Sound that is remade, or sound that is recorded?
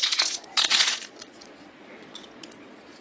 remade